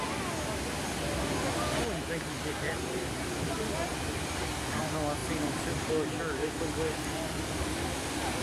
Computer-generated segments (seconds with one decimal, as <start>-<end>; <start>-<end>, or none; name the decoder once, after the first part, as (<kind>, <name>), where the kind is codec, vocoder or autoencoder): none